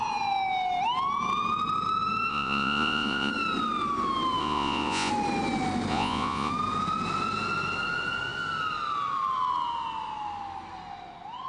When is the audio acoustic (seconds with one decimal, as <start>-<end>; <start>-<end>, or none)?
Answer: 0.0-2.3; 3.3-4.4; 5.1-5.9; 6.5-11.5